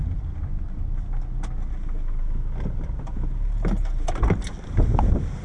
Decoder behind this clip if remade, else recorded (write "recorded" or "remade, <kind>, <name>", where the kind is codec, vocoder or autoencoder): recorded